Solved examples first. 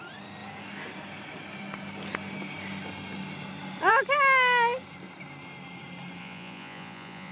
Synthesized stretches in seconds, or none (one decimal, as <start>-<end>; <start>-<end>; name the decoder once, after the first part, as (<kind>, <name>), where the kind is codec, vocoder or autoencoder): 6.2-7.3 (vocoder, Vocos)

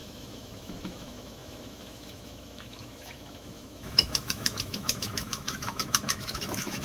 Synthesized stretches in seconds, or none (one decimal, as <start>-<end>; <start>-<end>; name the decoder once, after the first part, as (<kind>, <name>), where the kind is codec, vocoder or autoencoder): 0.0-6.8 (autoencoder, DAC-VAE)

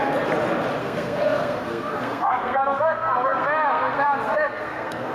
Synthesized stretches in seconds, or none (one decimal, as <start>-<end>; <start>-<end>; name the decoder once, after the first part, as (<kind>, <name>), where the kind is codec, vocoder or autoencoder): 0.8-5.1 (codec, SNAC)

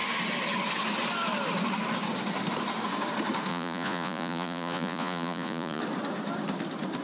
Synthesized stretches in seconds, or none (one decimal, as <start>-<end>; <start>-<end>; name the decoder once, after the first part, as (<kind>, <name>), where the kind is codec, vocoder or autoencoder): 3.5-5.8 (vocoder, Vocos)

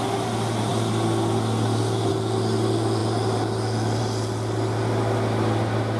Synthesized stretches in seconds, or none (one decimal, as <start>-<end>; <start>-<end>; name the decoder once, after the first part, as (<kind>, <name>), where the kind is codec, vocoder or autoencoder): none

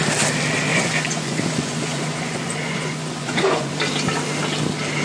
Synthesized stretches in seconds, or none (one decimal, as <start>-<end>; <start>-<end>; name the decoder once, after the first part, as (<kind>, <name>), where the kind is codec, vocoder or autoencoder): 0.7-3.7 (vocoder, Vocos)

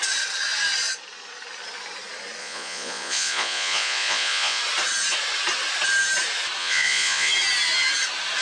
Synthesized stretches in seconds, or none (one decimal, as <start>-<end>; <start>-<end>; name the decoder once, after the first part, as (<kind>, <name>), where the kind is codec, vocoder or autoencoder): 2.4-4.6 (vocoder, Vocos); 6.6-7.3